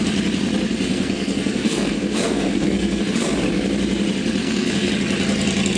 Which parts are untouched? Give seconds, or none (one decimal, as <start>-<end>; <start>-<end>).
0.0-0.9; 3.0-4.4; 4.9-5.8